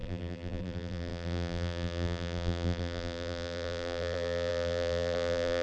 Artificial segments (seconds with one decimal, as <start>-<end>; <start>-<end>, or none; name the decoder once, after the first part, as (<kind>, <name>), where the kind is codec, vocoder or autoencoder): 0.0-5.6 (vocoder, BigVGAN v2)